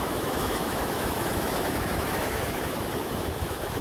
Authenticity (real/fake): fake